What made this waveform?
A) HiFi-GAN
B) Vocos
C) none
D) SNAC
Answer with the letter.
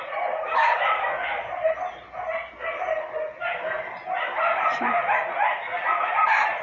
C